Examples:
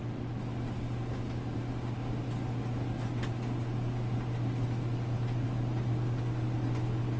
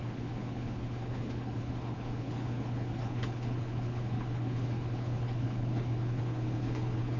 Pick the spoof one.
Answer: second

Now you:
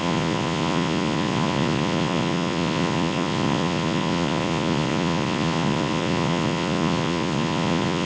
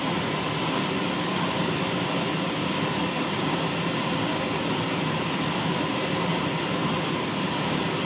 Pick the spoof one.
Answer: first